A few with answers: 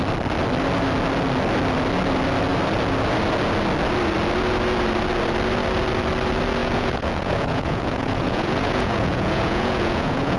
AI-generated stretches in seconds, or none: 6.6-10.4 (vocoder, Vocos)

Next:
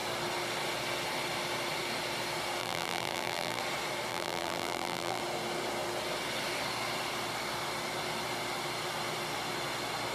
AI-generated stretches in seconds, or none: 2.6-3.6 (vocoder, BigVGAN v2); 4.1-5.2

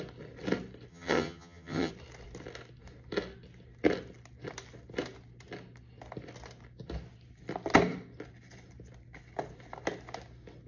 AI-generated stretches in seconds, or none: 0.9-1.9 (vocoder, HiFi-GAN)